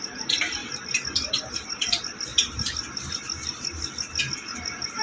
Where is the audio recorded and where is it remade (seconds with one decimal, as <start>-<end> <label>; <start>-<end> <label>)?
0.0-0.6 remade; 0.6-1.3 recorded; 1.3-2.3 remade; 2.3-4.2 recorded; 4.2-5.0 remade